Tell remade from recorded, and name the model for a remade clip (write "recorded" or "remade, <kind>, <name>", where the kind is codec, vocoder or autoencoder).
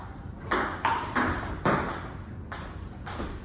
recorded